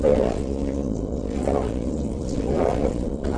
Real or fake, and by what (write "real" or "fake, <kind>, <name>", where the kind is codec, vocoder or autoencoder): fake, vocoder, Vocos